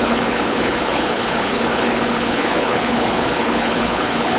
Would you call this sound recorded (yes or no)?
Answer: no